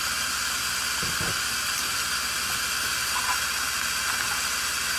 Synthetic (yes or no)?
no